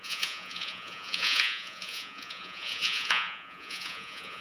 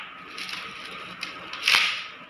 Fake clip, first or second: first